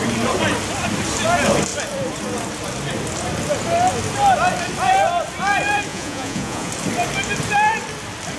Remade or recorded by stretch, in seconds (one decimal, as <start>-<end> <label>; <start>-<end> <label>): 0.0-5.9 recorded; 5.9-6.7 remade; 6.7-8.4 recorded